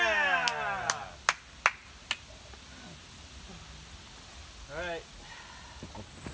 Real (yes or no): yes